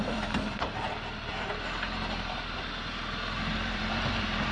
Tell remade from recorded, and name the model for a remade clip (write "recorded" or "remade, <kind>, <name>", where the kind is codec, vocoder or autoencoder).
remade, vocoder, BigVGAN v2